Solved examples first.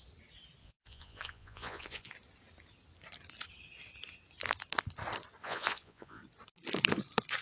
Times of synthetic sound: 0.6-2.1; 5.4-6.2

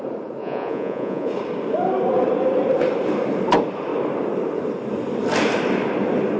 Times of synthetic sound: 0.4-1.3

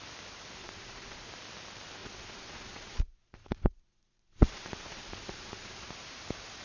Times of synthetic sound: 0.6-1.3; 2.0-5.9

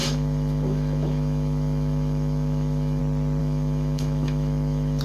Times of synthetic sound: 0.0-3.0; 3.4-5.0

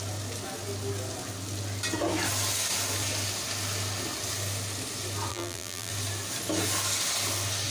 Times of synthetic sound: 5.3-5.9

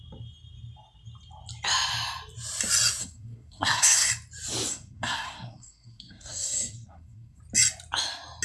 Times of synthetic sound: 3.0-4.1; 4.7-7.4

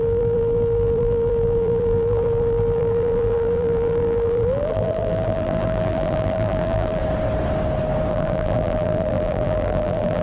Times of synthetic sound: 0.0-7.0; 8.1-10.2